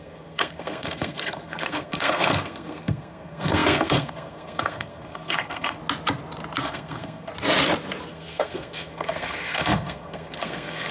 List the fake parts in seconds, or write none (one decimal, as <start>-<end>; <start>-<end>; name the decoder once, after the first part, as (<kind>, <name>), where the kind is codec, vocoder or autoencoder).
0.0-5.8 (codec, SNAC); 6.6-7.3; 8.1-10.9